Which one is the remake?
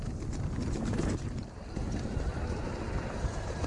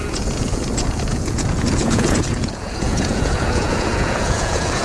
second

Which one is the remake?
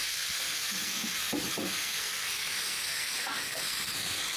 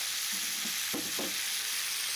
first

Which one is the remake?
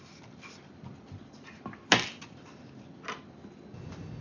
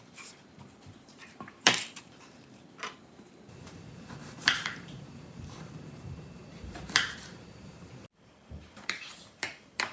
second